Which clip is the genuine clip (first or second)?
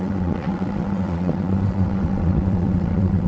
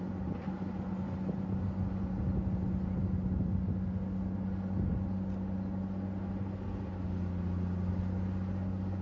second